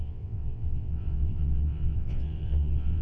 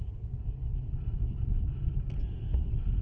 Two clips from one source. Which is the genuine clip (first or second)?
second